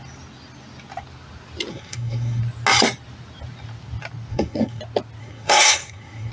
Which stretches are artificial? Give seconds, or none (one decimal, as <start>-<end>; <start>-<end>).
1.7-2.4; 4.3-4.8; 5.2-6.3